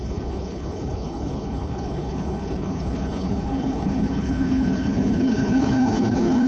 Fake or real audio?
fake